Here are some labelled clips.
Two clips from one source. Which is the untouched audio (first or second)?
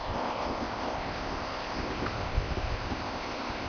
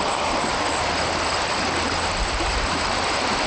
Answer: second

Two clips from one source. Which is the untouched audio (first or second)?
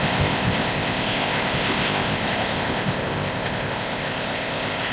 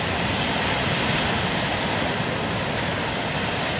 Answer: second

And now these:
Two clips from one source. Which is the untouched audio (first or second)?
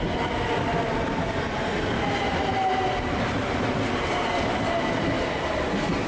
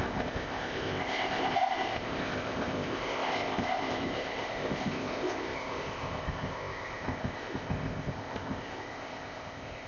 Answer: first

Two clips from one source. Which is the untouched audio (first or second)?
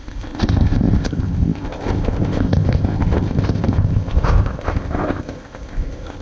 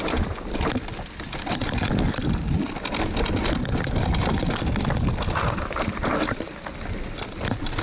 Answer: second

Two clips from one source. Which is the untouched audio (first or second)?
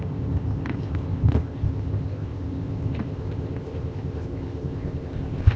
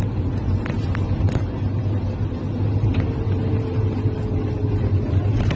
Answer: second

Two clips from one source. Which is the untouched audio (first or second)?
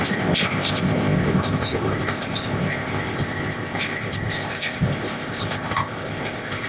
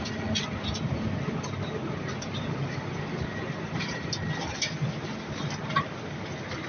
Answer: second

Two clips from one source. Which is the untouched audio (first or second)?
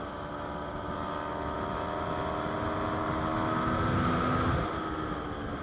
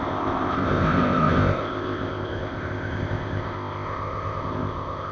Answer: first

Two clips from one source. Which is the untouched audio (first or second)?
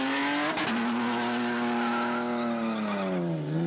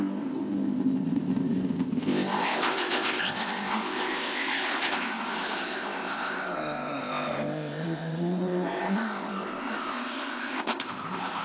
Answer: first